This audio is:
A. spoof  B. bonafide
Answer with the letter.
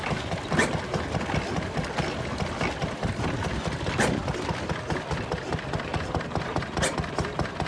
B